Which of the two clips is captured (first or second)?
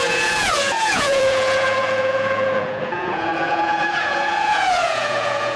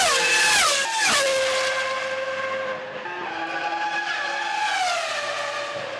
second